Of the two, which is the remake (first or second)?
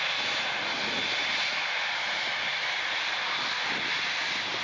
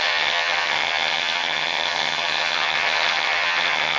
second